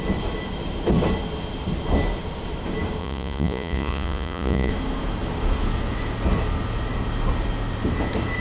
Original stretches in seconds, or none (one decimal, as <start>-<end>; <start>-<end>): 0.0-3.0; 4.7-8.4